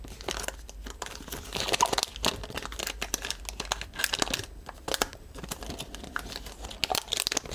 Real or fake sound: real